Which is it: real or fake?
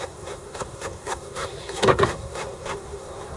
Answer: fake